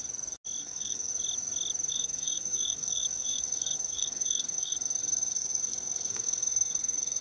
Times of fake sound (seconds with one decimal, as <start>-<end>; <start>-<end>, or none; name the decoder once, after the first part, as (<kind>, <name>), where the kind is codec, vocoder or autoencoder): 0.6-1.1 (codec, SNAC); 1.9-7.2